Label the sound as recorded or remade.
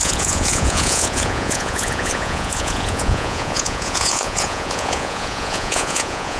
remade